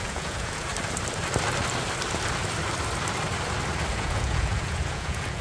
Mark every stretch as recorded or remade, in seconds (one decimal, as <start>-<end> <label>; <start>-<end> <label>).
0.0-0.7 remade; 0.7-3.9 recorded; 3.9-5.4 remade